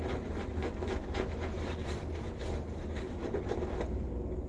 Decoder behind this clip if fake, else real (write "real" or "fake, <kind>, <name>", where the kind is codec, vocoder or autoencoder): real